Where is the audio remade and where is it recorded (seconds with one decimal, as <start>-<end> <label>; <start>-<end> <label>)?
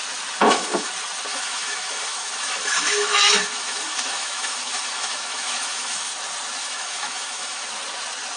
0.0-0.4 recorded; 0.4-0.9 remade; 0.9-1.3 recorded; 1.3-6.1 remade; 6.1-6.6 recorded; 6.6-7.7 remade; 7.7-8.4 recorded